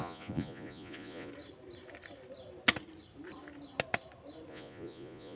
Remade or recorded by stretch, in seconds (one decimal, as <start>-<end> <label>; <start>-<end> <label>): 0.0-1.3 remade; 1.3-4.5 recorded; 4.5-5.4 remade